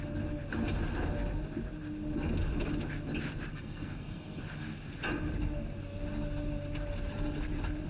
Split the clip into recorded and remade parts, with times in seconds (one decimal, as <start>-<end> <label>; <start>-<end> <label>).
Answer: 0.0-3.5 recorded; 3.5-4.4 remade; 4.4-7.9 recorded